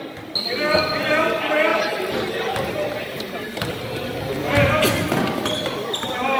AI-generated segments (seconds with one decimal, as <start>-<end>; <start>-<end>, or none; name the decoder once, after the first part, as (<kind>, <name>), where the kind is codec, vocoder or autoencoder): 1.7-4.7 (vocoder, BigVGAN v2)